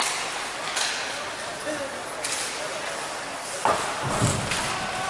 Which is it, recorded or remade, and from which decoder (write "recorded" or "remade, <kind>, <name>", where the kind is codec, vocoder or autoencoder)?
recorded